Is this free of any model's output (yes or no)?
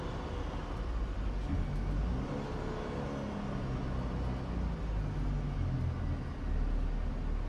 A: yes